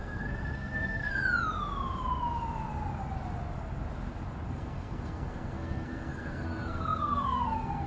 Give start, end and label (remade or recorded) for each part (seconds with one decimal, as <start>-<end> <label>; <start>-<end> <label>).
0.0-1.2 remade; 1.2-4.5 recorded; 4.5-7.9 remade